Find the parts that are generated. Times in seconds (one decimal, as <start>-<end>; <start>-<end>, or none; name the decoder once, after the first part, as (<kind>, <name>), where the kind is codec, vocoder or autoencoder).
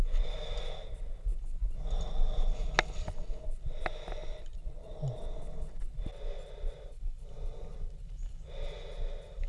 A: 4.2-5.0 (vocoder, BigVGAN v2)